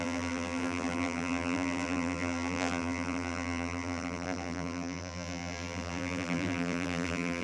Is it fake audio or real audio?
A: fake